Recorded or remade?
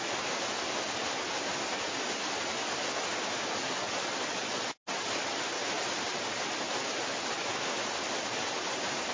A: recorded